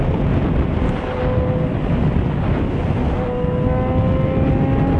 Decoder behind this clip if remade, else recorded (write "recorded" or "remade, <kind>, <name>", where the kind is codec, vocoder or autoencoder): recorded